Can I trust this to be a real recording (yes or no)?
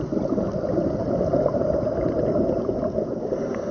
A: yes